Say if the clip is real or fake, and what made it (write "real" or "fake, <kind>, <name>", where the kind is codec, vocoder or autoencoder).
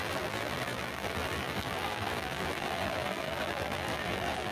fake, vocoder, BigVGAN v2